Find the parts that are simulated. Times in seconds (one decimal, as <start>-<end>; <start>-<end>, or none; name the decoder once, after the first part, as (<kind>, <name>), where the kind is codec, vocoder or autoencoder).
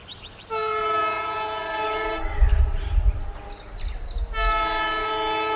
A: 0.0-3.4 (vocoder, BigVGAN v2)